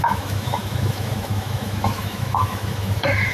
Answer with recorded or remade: remade